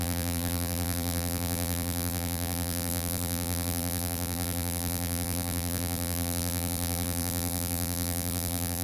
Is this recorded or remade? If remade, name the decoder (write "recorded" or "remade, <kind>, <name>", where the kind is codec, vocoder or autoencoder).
remade, vocoder, BigVGAN v2